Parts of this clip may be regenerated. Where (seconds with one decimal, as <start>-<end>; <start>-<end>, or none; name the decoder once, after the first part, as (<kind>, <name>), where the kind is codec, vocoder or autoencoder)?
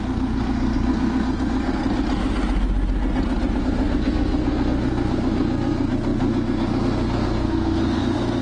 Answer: 0.0-1.8 (codec, SNAC); 3.6-8.4